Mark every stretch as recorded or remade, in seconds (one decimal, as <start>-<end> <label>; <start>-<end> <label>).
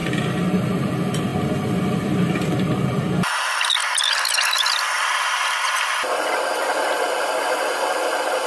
0.0-3.8 remade; 3.8-7.2 recorded; 7.2-8.5 remade